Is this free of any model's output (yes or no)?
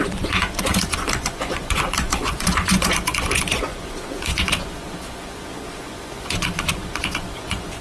no